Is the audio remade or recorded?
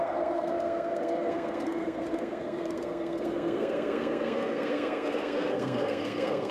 remade